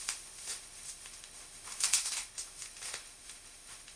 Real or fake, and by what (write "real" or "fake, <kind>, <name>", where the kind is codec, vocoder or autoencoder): fake, autoencoder, DAC-VAE